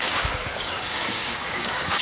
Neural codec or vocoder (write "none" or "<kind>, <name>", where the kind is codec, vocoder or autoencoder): codec, DAC